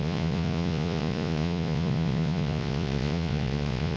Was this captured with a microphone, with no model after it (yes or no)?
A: no